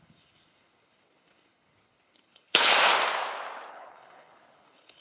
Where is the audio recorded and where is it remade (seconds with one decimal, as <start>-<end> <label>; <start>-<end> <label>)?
0.0-2.7 remade; 2.7-3.7 recorded; 3.7-5.0 remade